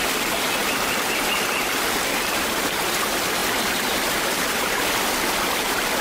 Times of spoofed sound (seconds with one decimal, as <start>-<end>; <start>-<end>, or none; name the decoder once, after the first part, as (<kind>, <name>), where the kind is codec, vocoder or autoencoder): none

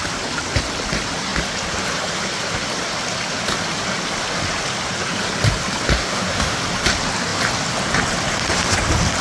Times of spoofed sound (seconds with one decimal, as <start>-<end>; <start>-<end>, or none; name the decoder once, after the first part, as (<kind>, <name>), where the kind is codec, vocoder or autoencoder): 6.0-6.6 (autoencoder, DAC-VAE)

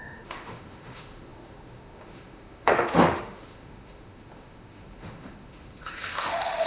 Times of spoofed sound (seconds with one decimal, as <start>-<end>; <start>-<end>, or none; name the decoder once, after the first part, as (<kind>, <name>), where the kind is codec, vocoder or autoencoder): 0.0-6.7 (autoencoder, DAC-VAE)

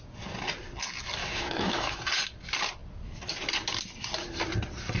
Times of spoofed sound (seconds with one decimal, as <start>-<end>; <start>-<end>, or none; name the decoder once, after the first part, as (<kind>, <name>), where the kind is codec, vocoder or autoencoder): 1.2-2.0 (autoencoder, DAC-VAE)